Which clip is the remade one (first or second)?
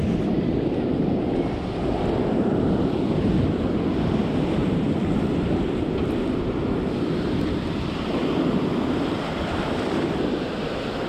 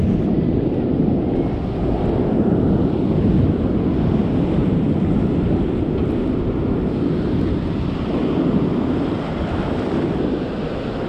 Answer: first